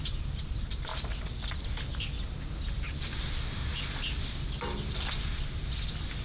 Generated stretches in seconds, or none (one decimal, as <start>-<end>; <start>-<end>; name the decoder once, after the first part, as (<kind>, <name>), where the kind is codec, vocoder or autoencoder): 0.0-0.9 (vocoder, BigVGAN v2); 3.2-3.6; 5.4-6.2